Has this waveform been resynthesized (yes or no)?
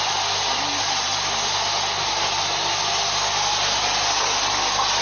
no